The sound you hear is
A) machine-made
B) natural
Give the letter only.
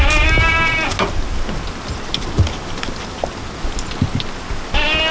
B